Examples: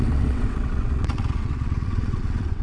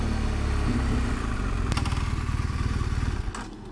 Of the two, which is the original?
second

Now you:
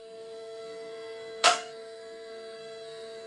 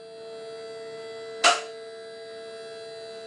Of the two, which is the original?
second